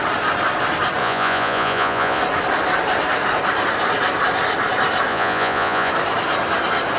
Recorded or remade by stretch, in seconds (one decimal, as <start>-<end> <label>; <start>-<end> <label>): 0.0-1.0 recorded; 1.0-2.2 remade; 2.2-5.1 recorded; 5.1-5.9 remade; 5.9-7.0 recorded